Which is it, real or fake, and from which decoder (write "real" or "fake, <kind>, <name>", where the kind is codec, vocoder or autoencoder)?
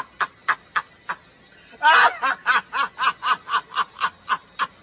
real